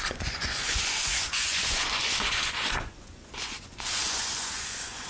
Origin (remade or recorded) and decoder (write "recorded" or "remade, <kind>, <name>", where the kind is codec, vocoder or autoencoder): remade, vocoder, Vocos